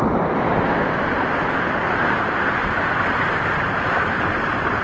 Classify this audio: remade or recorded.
recorded